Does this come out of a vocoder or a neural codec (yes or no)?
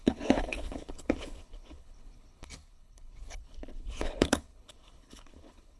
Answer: yes